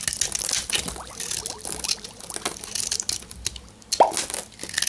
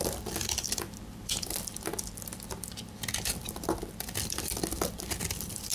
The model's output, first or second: second